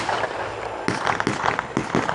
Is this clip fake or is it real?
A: real